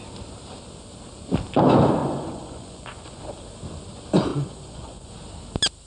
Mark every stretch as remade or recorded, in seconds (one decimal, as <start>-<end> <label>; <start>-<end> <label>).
0.0-2.0 recorded; 2.0-3.2 remade; 3.2-4.3 recorded; 4.3-5.1 remade; 5.1-5.9 recorded